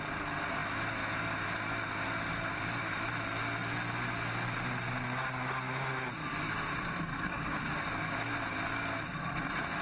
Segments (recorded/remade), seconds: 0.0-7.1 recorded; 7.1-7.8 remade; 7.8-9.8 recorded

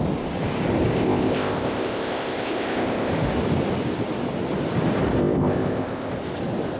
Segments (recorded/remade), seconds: 0.0-0.9 recorded; 0.9-3.1 remade; 3.1-5.2 recorded; 5.2-6.1 remade; 6.1-6.8 recorded

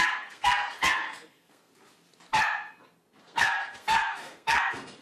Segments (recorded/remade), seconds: 0.0-1.7 remade; 1.7-3.2 recorded; 3.2-5.0 remade

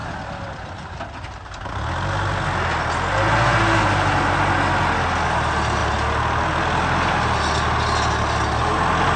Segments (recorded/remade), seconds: 0.0-9.2 recorded

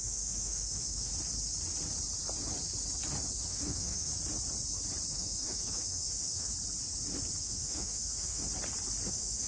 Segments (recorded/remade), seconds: 0.0-1.1 remade; 1.1-3.3 recorded; 3.3-4.1 remade; 4.1-5.1 recorded; 5.1-6.5 remade; 6.5-7.4 recorded; 7.4-8.4 remade; 8.4-9.1 recorded; 9.1-9.5 remade

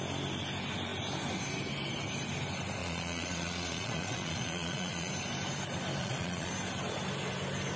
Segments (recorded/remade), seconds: 0.0-2.8 recorded; 2.8-5.1 remade; 5.1-6.0 recorded; 6.0-6.5 remade; 6.5-7.8 recorded

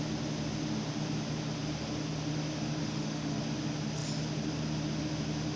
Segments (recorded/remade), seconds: 0.0-2.8 recorded; 2.8-3.4 remade; 3.4-5.6 recorded